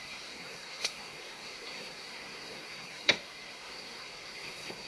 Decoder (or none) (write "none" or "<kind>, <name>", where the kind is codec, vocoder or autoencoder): codec, SNAC